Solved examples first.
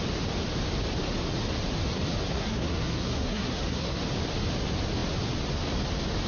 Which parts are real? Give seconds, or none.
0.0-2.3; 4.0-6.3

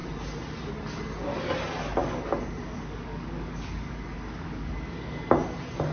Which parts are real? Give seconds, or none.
0.0-2.0; 5.3-5.9

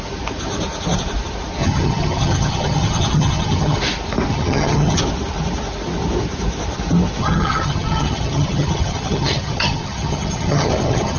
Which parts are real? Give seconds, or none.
0.0-1.6; 3.8-4.3; 5.0-7.2

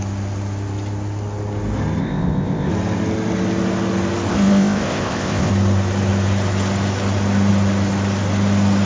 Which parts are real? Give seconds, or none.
0.0-2.0; 2.7-4.3; 5.5-8.9

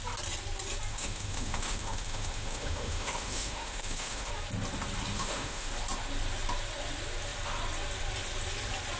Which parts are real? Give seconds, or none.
0.0-0.9; 4.3-5.1; 5.7-9.0